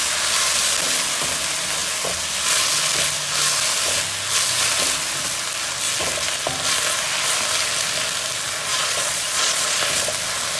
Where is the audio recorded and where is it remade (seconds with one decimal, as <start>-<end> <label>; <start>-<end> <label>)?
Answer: 0.0-8.7 recorded; 8.7-9.8 remade; 9.8-10.6 recorded